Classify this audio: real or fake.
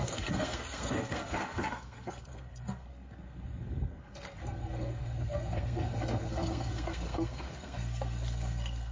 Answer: fake